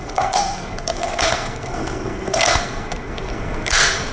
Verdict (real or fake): fake